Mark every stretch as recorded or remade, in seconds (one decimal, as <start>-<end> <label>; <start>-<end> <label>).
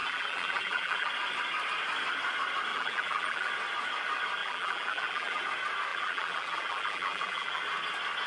0.0-1.1 remade; 1.1-2.7 recorded; 2.7-3.5 remade; 3.5-4.4 recorded; 4.4-5.4 remade; 5.4-5.9 recorded; 5.9-7.6 remade; 7.6-8.3 recorded